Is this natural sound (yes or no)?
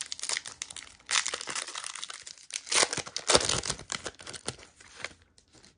yes